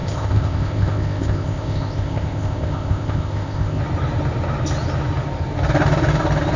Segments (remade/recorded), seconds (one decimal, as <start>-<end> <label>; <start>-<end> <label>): 0.0-3.8 remade; 3.8-6.6 recorded